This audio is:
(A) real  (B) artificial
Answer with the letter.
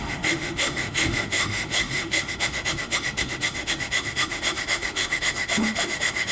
B